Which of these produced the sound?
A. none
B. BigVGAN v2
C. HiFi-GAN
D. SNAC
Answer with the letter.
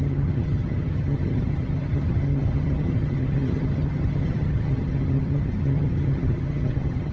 C